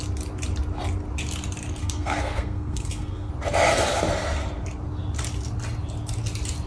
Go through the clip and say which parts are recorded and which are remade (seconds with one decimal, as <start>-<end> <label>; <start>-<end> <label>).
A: 0.0-1.8 recorded; 1.8-3.3 remade; 3.3-6.7 recorded